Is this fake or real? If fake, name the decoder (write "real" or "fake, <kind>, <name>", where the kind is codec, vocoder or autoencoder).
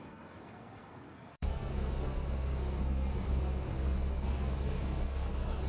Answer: fake, codec, SNAC